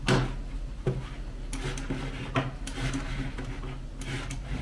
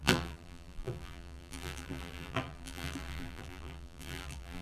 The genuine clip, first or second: first